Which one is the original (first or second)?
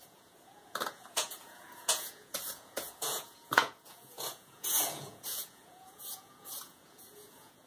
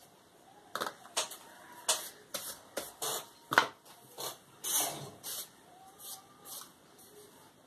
second